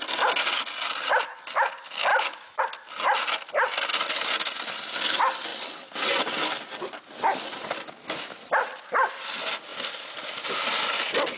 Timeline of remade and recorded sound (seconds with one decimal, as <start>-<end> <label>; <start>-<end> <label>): 0.0-2.1 recorded; 2.1-2.6 remade; 2.6-11.4 recorded